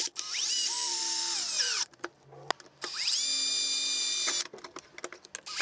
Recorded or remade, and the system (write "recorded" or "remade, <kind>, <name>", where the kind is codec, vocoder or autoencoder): recorded